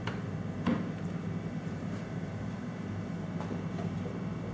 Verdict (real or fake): fake